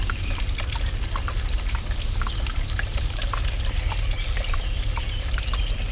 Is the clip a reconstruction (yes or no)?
no